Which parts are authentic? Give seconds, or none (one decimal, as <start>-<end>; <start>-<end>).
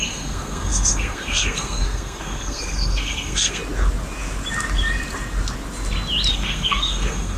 3.6-6.3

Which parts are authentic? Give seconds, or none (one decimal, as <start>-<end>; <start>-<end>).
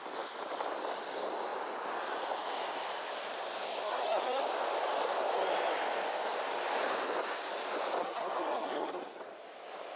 0.0-3.8; 4.4-8.0; 9.2-10.0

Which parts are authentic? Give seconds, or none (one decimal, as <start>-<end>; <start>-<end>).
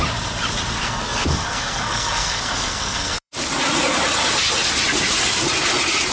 0.0-0.8; 3.3-6.1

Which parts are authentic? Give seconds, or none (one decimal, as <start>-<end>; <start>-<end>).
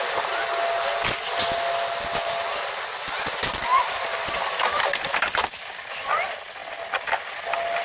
0.0-7.8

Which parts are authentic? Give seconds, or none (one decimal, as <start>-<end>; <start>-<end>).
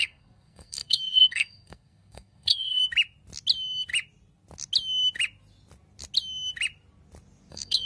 2.8-7.5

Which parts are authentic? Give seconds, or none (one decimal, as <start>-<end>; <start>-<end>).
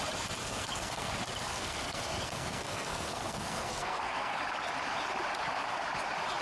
0.0-0.4; 1.1-1.5; 4.4-6.4